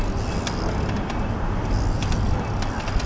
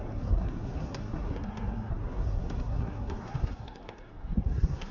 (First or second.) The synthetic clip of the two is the second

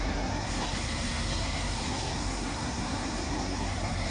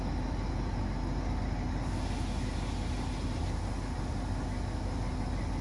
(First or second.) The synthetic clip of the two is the first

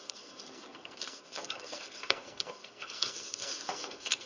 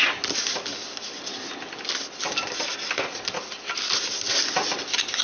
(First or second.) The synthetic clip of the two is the first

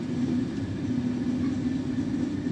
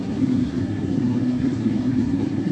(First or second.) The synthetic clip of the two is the second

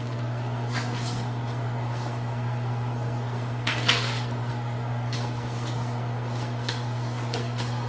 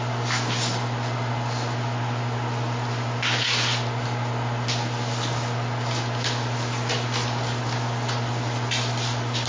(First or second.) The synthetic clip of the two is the first